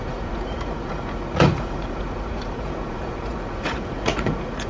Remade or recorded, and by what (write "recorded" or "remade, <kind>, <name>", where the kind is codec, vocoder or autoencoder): remade, vocoder, Vocos